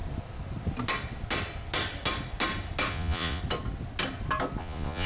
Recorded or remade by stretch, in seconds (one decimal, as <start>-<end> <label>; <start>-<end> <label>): 0.0-2.9 recorded; 2.9-3.4 remade; 3.4-4.6 recorded; 4.6-5.1 remade

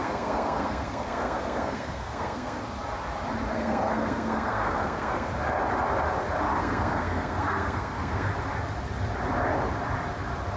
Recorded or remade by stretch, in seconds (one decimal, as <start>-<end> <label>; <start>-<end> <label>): 0.0-2.6 remade; 2.6-3.5 recorded; 3.5-5.3 remade; 5.3-6.6 recorded; 6.6-8.3 remade; 8.3-10.6 recorded

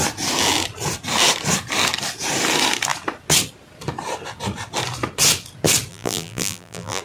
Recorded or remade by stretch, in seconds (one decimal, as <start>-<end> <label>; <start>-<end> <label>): 0.0-5.9 recorded; 5.9-7.0 remade

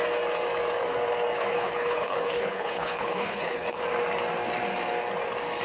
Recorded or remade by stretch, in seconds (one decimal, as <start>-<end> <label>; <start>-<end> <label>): 0.0-1.5 recorded; 1.5-3.8 remade; 3.8-5.6 recorded